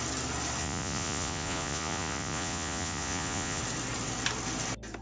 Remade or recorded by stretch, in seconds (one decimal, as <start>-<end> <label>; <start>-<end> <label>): 0.0-0.6 recorded; 0.6-3.6 remade; 3.6-5.0 recorded